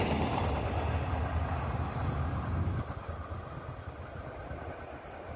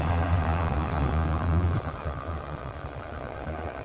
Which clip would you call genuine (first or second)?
first